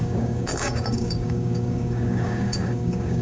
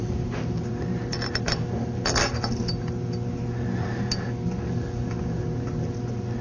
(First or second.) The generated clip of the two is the first